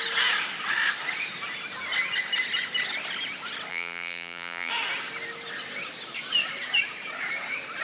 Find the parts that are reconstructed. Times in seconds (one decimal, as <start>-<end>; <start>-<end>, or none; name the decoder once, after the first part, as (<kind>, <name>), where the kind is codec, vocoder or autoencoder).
3.7-4.7 (vocoder, BigVGAN v2)